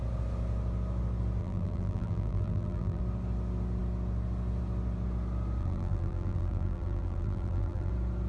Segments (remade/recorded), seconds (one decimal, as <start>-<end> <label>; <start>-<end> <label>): 0.0-1.4 recorded; 1.4-3.0 remade; 3.0-5.6 recorded; 5.6-7.9 remade; 7.9-8.3 recorded